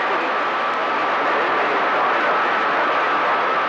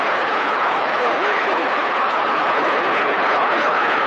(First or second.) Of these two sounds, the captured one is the first